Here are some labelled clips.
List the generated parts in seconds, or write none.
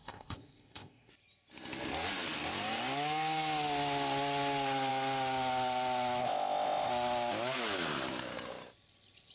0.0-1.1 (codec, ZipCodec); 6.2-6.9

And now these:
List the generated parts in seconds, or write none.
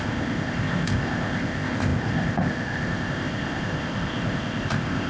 0.0-5.1 (codec, ZipCodec)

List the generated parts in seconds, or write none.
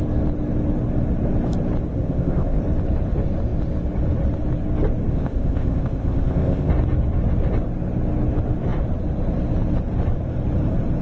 1.9-2.6 (codec, ZipCodec); 5.1-6.7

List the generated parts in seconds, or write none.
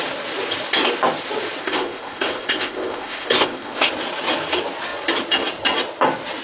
1.6-3.9 (codec, ZipCodec)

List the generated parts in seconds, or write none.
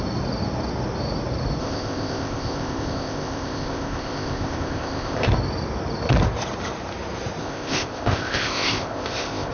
1.6-5.3 (codec, ZipCodec); 7.4-9.5